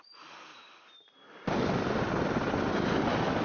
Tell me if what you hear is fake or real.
real